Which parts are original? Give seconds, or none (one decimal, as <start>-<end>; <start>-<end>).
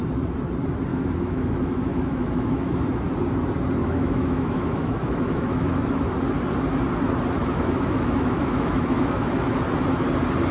0.0-0.9; 2.8-3.8; 6.0-7.4; 9.6-10.5